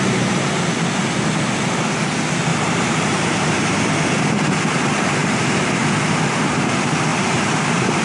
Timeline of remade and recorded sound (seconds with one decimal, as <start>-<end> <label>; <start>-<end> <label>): 0.0-2.5 recorded; 2.5-3.7 remade; 3.7-5.2 recorded; 5.2-5.7 remade; 5.7-7.1 recorded; 7.1-8.0 remade